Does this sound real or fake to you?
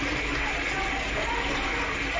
real